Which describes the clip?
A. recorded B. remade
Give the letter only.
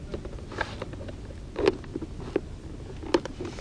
A